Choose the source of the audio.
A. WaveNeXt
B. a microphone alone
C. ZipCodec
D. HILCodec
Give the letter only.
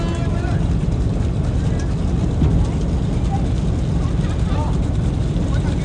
B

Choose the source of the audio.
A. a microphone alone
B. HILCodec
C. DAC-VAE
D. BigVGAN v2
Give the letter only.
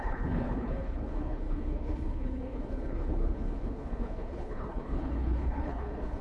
B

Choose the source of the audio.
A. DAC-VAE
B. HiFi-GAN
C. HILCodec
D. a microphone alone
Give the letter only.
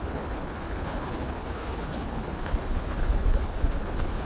C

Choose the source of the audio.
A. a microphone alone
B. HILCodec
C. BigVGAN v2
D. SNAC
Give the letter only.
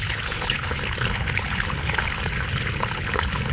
B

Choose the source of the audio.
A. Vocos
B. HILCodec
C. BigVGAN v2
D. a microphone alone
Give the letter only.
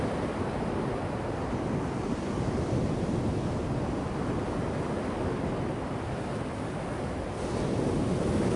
D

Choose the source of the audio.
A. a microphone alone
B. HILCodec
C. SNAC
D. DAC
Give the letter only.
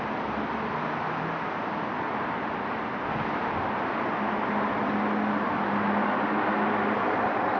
A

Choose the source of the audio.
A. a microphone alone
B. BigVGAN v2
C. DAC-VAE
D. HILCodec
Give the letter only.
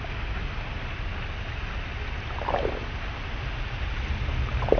A